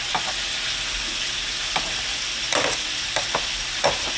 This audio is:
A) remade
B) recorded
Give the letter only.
B